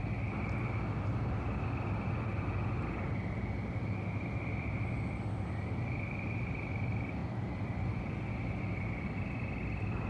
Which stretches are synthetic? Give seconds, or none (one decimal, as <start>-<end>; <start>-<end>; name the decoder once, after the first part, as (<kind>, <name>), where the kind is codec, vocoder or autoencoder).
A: none